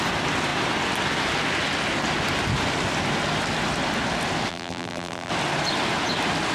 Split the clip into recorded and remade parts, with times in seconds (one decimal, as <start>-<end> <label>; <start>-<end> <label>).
0.0-4.5 recorded; 4.5-5.3 remade; 5.3-6.5 recorded